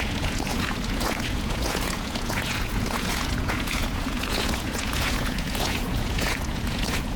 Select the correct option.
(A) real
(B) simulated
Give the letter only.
B